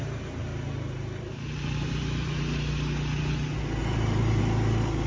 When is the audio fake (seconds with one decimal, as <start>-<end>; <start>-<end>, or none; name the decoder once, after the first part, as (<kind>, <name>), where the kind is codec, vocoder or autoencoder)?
0.5-2.4 (vocoder, BigVGAN v2); 3.8-4.4